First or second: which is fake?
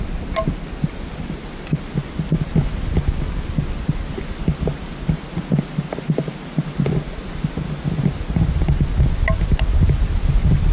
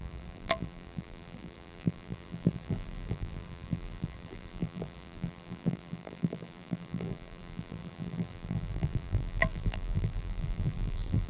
second